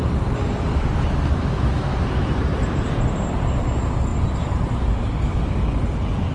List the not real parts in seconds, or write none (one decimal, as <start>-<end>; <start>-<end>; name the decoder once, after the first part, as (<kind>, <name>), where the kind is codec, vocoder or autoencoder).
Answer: 1.9-3.5 (vocoder, BigVGAN v2); 4.1-4.9